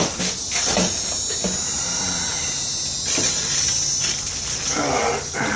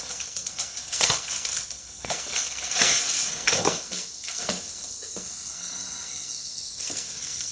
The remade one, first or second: second